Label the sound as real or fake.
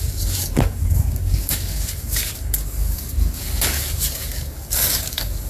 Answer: fake